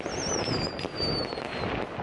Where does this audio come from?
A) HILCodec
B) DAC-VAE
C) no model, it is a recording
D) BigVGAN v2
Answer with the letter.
C